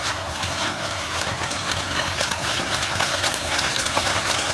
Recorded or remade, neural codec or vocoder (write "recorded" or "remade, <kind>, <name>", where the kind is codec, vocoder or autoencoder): remade, codec, SNAC